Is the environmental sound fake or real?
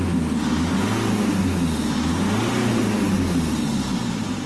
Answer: real